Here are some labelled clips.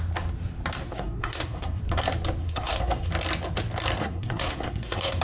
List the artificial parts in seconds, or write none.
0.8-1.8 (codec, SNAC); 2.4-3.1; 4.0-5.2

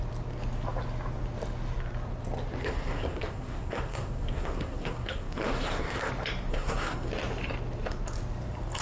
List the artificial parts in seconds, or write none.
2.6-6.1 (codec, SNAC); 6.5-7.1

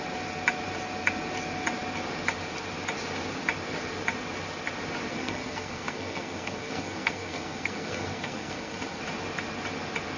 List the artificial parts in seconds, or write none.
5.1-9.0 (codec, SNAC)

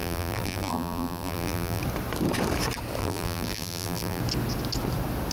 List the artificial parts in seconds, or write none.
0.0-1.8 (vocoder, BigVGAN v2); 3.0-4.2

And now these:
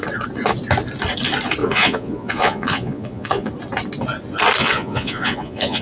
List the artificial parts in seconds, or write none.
1.6-3.5 (vocoder, Vocos); 4.6-5.8

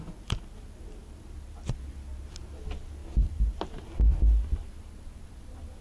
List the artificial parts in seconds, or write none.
none

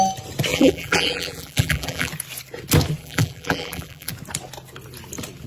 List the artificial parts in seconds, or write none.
0.5-2.1 (vocoder, BigVGAN v2); 3.0-4.1